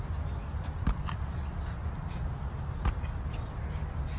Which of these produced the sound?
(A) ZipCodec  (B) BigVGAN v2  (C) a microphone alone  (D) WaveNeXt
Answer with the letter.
C